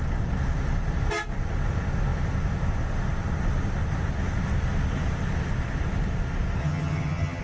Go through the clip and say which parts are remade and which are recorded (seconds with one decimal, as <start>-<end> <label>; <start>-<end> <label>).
0.0-6.6 recorded; 6.6-7.4 remade